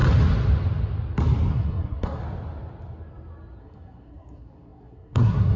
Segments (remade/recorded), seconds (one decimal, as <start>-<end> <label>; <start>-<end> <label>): 0.0-1.5 recorded; 1.5-2.2 remade; 2.2-3.6 recorded; 3.6-5.6 remade